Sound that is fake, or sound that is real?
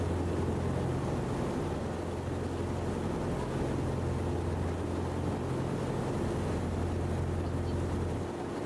real